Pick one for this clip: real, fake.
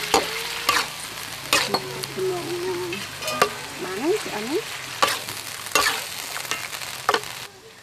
real